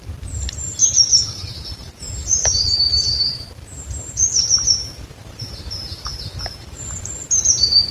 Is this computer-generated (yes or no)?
yes